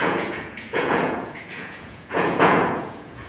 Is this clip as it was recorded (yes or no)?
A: no